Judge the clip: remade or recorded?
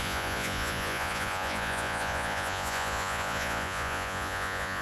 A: remade